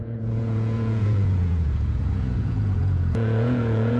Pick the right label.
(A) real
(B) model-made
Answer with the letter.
B